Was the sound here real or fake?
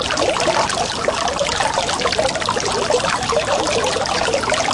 real